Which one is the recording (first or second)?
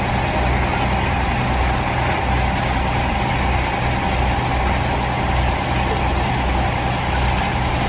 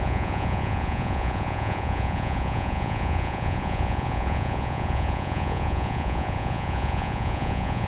first